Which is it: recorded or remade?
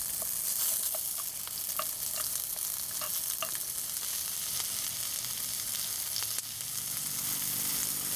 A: recorded